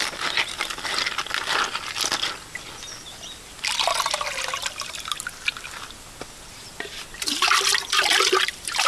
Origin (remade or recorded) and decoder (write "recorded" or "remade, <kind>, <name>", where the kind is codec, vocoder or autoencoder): recorded